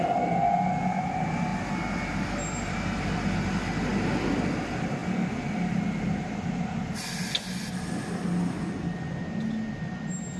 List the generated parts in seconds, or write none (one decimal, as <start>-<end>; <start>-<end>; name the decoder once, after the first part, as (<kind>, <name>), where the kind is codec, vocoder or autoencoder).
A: none